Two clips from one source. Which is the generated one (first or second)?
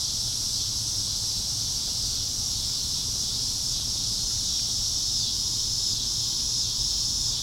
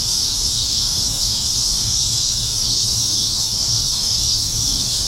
second